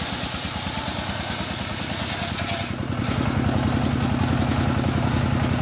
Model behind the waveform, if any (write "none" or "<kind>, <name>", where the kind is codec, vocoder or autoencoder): none